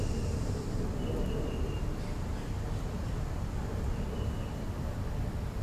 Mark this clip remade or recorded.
recorded